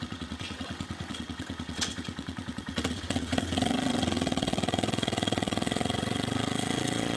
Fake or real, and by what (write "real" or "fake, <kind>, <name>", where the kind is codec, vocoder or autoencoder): fake, vocoder, WaveNeXt